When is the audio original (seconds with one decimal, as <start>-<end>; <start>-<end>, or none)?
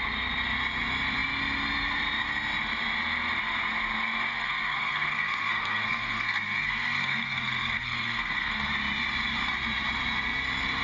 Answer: 0.0-4.3; 8.7-10.8